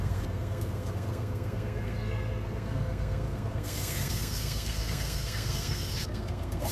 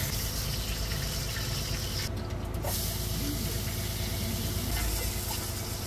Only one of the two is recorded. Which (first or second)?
second